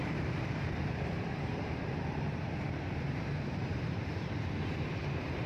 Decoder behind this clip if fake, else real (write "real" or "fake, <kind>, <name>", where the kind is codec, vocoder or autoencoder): fake, vocoder, BigVGAN v2